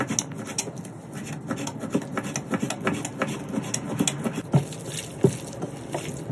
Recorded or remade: recorded